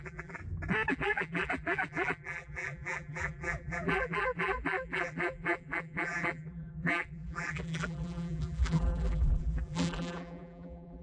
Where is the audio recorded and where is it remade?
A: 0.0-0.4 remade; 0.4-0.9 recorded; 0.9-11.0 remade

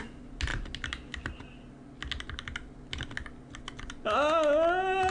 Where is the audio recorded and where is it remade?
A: 0.0-5.1 recorded

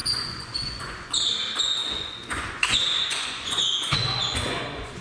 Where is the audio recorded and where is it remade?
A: 0.0-1.1 remade; 1.1-1.8 recorded; 1.8-5.0 remade

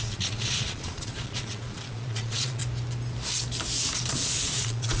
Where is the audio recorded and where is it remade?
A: 0.0-2.6 remade; 2.6-4.1 recorded; 4.1-5.0 remade

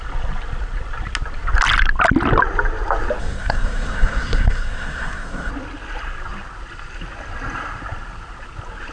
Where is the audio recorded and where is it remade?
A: 0.0-3.2 recorded; 3.2-5.5 remade; 5.5-8.9 recorded

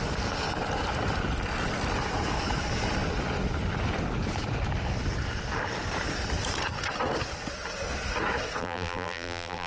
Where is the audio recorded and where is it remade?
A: 0.0-8.6 recorded; 8.6-9.7 remade